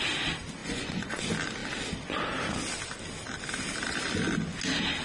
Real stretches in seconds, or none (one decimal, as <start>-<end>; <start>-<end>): 0.0-0.6; 1.2-5.0